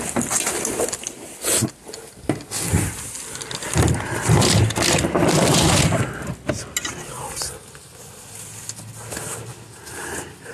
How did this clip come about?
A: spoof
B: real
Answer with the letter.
B